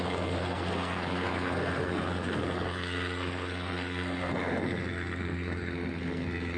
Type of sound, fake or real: fake